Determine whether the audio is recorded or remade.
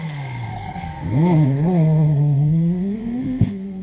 remade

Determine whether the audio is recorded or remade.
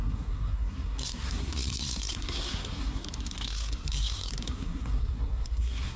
remade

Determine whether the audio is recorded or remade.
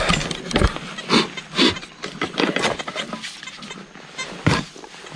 recorded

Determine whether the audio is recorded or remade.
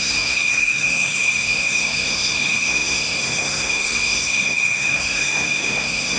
remade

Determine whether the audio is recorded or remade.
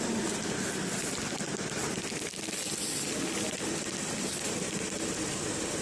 recorded